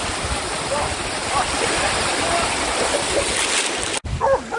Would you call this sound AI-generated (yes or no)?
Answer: no